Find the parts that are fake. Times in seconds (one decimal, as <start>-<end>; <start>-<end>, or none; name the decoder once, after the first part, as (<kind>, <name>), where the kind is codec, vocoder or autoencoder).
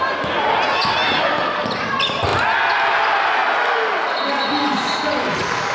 none